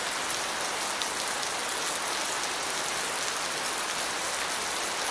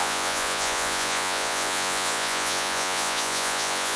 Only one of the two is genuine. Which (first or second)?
first